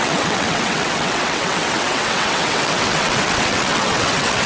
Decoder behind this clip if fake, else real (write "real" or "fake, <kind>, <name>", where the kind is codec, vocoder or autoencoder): fake, vocoder, WaveNeXt